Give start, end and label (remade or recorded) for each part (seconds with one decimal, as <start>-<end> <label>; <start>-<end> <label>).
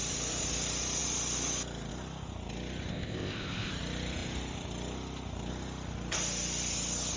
0.0-2.9 recorded; 2.9-3.7 remade; 3.7-7.2 recorded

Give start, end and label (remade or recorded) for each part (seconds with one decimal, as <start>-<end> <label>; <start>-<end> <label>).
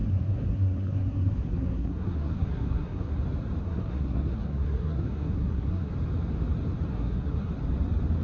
0.0-3.1 remade; 3.1-3.6 recorded; 3.6-5.9 remade; 5.9-6.9 recorded; 6.9-7.5 remade; 7.5-8.2 recorded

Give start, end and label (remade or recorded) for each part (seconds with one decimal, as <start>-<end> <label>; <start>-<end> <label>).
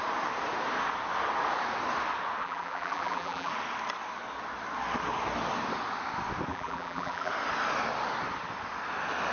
0.0-2.4 recorded; 2.4-3.5 remade; 3.5-6.5 recorded; 6.5-7.3 remade; 7.3-9.3 recorded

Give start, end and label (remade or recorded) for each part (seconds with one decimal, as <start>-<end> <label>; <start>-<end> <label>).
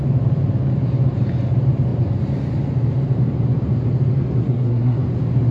0.0-4.4 recorded; 4.4-5.0 remade; 5.0-5.5 recorded